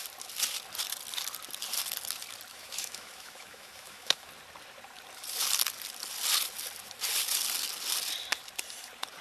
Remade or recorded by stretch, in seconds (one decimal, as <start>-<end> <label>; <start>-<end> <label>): 0.0-2.5 recorded; 2.5-4.3 remade; 4.3-9.2 recorded